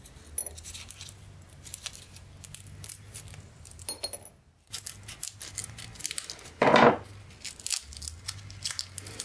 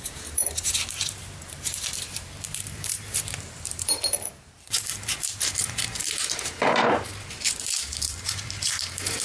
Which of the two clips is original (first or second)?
first